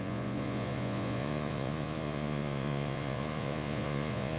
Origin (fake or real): fake